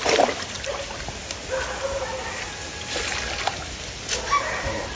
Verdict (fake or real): real